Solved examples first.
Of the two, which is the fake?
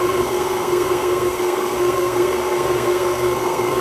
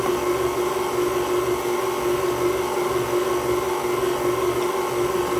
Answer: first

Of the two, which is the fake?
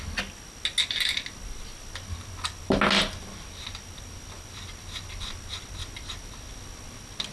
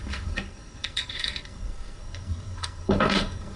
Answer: second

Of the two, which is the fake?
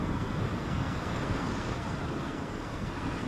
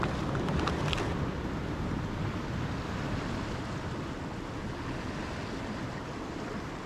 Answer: first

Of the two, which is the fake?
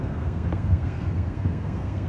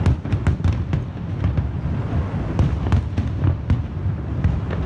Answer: first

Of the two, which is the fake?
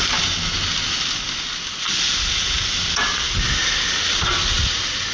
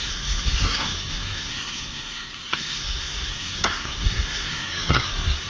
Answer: second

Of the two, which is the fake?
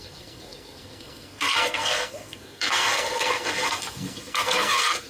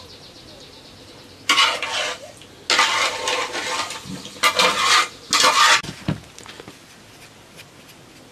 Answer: first